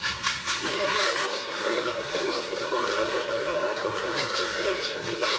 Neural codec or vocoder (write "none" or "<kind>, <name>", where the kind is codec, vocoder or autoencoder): codec, SNAC